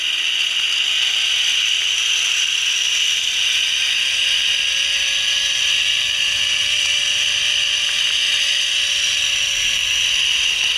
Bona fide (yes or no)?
yes